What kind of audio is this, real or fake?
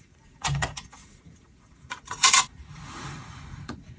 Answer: fake